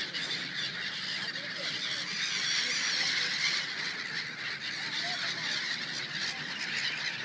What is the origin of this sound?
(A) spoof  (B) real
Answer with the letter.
B